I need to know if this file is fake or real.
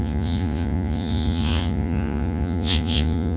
fake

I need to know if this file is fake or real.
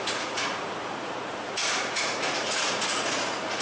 fake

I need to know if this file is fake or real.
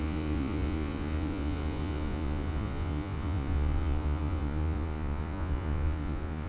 fake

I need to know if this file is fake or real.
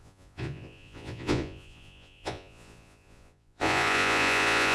fake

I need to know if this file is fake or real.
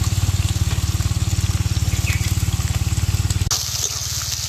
real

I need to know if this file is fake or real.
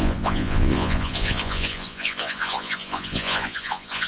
fake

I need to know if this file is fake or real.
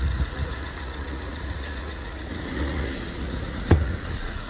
fake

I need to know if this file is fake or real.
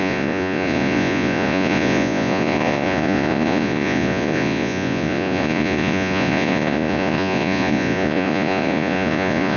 fake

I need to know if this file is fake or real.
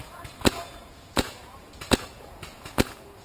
fake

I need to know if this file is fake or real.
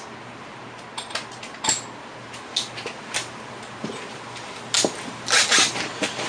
real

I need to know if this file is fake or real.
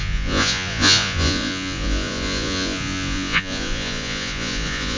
fake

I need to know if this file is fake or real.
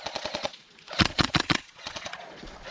fake